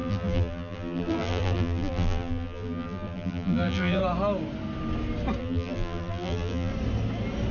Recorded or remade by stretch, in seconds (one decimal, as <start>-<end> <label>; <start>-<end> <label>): 0.0-4.0 remade; 4.0-5.4 recorded; 5.4-6.7 remade; 6.7-7.5 recorded